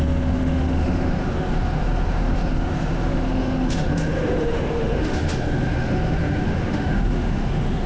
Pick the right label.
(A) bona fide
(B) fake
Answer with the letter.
B